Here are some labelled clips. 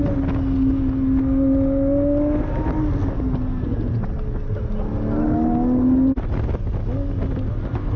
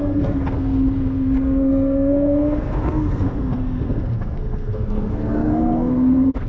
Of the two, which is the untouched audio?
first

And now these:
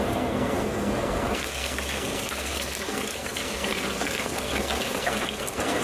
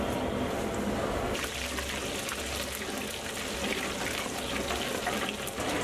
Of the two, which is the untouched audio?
second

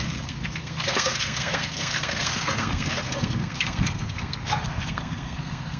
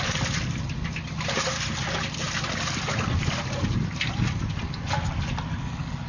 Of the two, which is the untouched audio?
second